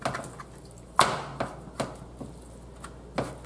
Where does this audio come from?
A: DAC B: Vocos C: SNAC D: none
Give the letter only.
D